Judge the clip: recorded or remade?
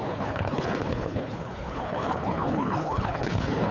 remade